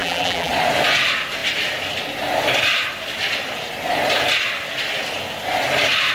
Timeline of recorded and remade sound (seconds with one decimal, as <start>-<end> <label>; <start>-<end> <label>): 0.0-0.5 remade; 0.5-6.1 recorded